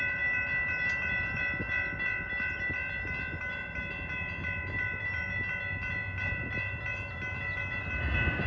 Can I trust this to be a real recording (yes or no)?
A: yes